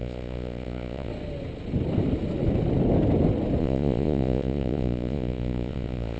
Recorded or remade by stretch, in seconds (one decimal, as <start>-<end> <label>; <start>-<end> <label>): 0.0-1.1 remade; 1.1-3.6 recorded; 3.6-6.2 remade